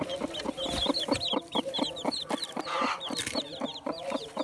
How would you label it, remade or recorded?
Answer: remade